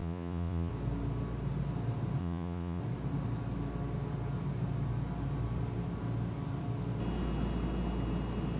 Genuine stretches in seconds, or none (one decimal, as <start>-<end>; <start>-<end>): 0.7-2.2; 2.8-8.6